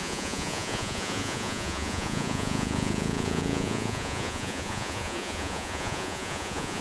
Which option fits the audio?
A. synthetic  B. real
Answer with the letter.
A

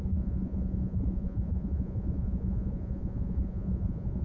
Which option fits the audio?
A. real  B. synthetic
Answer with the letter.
B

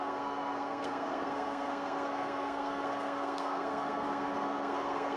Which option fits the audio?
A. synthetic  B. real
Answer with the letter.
A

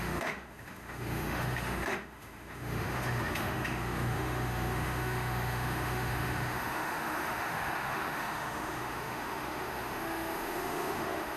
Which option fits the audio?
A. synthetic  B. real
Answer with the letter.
A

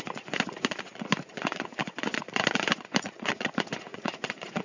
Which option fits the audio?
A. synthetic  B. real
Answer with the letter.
A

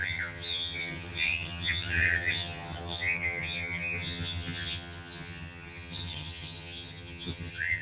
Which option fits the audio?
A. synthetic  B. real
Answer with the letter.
A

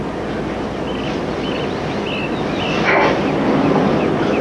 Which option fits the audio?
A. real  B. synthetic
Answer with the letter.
A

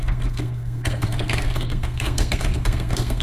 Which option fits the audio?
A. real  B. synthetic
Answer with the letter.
B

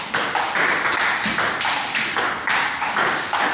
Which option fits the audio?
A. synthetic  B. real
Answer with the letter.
A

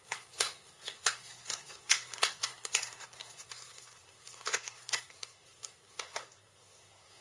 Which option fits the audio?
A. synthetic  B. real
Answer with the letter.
A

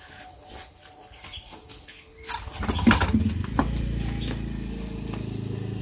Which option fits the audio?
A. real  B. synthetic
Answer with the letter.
A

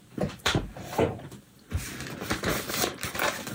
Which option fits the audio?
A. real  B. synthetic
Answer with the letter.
B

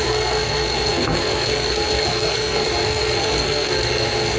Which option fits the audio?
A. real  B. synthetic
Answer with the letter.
B